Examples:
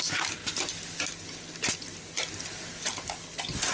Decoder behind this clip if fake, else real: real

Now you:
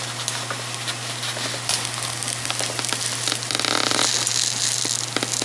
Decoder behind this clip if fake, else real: real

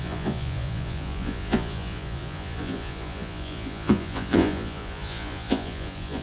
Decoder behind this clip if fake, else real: fake, vocoder, Vocos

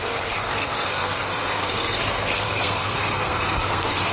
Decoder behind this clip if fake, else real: fake, codec, SNAC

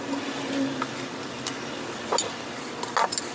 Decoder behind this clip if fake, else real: real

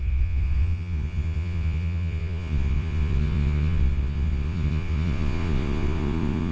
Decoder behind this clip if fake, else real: fake, vocoder, Vocos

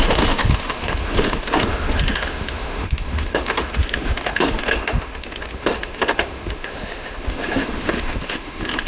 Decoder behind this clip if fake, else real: fake, autoencoder, DAC-VAE